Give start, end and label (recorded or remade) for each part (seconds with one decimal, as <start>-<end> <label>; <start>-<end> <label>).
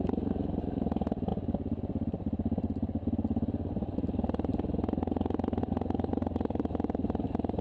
0.0-7.6 recorded